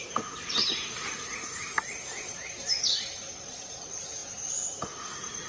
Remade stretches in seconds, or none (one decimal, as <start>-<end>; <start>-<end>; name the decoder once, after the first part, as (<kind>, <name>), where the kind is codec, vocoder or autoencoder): none